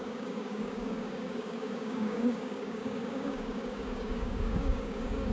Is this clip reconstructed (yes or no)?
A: yes